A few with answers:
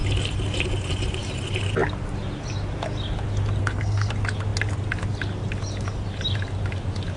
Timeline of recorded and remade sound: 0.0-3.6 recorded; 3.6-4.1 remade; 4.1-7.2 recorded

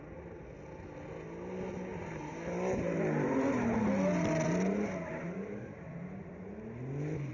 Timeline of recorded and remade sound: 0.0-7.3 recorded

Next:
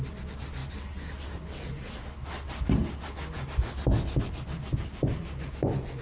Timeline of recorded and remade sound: 0.0-6.0 recorded

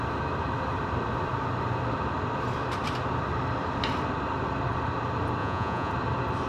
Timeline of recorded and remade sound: 0.0-5.4 recorded; 5.4-5.9 remade; 5.9-6.5 recorded

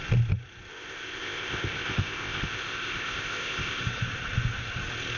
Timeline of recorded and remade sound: 0.0-0.7 recorded; 0.7-3.8 remade; 3.8-5.2 recorded